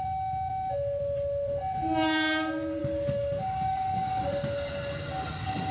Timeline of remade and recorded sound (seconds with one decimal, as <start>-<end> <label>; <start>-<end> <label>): 0.0-2.8 recorded; 2.8-4.2 remade; 4.2-5.7 recorded